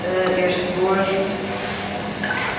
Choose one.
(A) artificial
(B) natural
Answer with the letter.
B